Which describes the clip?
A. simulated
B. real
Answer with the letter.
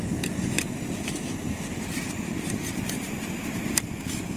A